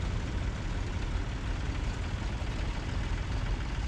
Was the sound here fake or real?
real